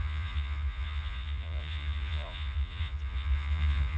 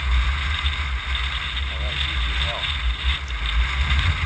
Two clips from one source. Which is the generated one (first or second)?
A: first